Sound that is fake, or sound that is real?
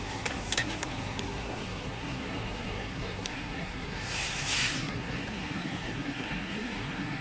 fake